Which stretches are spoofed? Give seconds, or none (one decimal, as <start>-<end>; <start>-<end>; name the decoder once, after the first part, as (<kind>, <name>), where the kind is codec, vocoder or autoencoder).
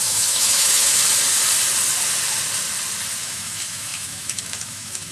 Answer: 0.0-0.9 (autoencoder, DAC-VAE); 3.2-5.1